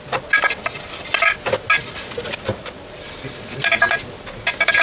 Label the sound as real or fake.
real